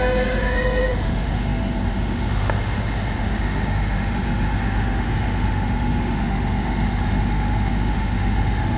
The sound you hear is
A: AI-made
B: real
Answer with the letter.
A